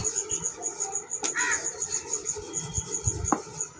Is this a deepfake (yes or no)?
no